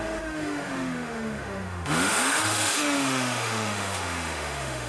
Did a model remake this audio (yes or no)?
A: yes